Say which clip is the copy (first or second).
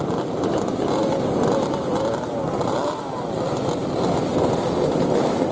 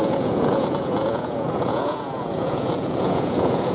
second